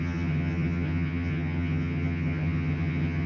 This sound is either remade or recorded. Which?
remade